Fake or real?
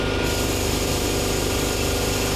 real